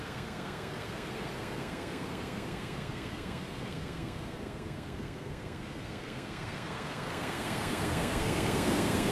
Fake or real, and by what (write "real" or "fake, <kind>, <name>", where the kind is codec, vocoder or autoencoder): fake, codec, SNAC